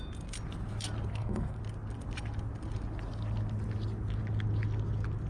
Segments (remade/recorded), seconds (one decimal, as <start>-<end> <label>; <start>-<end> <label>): 0.0-1.1 recorded; 1.1-1.6 remade; 1.6-5.3 recorded